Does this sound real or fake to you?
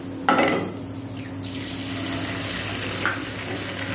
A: real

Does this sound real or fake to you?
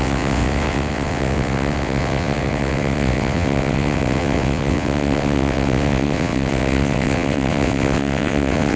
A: fake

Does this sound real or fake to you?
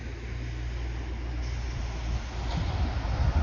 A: real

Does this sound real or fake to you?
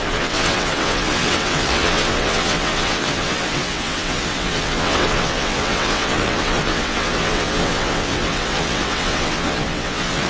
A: fake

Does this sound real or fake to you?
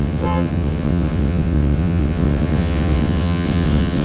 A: fake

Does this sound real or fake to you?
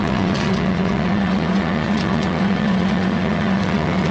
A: fake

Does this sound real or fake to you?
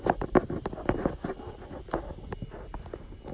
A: real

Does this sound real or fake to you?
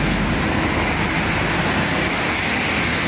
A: real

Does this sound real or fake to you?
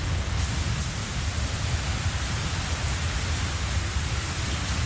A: real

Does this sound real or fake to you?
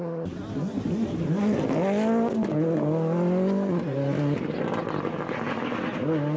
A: real